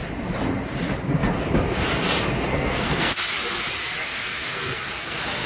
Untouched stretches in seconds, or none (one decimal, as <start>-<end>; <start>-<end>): 0.0-2.5; 3.3-4.0